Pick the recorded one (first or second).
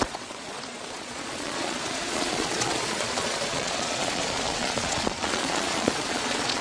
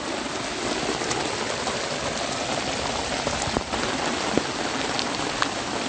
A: second